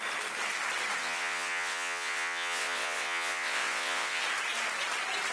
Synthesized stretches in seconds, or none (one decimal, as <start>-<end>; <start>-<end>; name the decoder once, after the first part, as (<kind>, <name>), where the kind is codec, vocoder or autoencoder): 1.0-4.2 (vocoder, WaveNeXt)